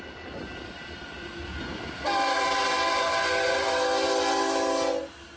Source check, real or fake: real